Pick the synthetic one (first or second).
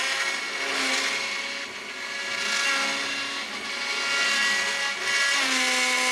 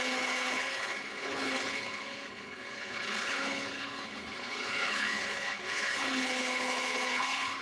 second